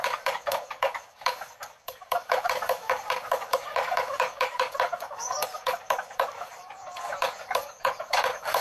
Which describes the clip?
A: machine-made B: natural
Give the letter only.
A